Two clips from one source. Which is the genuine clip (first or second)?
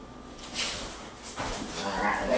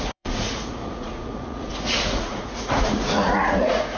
first